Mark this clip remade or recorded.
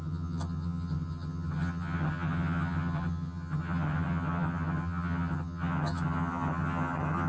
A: remade